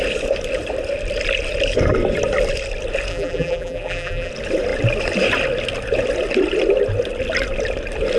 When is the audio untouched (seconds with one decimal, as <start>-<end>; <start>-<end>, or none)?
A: 0.0-3.1; 4.3-8.2